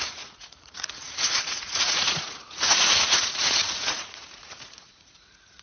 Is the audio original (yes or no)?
no